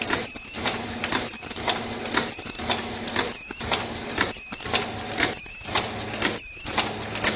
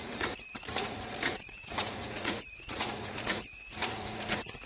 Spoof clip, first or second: second